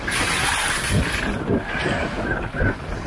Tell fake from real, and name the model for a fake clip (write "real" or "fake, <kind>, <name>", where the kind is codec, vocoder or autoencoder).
fake, vocoder, BigVGAN v2